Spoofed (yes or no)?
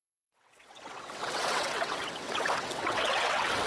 yes